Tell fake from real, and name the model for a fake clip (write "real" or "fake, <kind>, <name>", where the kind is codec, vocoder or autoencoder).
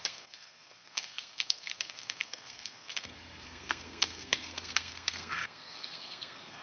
fake, codec, SNAC